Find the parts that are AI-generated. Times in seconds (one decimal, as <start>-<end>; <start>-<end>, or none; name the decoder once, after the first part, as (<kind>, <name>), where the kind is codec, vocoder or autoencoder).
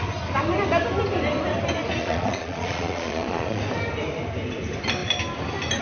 2.0-3.6 (vocoder, Vocos)